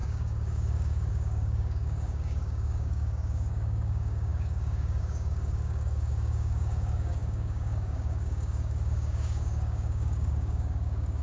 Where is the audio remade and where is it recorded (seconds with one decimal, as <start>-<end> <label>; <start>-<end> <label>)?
0.0-11.2 remade